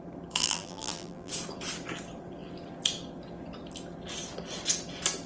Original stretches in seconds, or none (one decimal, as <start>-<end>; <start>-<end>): 0.0-0.4; 1.3-5.3